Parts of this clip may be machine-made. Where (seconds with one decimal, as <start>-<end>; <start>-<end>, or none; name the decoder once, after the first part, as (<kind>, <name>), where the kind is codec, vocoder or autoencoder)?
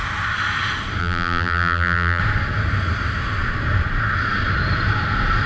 1.0-2.2 (vocoder, BigVGAN v2)